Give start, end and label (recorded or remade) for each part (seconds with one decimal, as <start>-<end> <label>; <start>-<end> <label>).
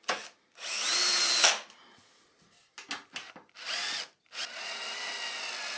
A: 0.0-5.8 recorded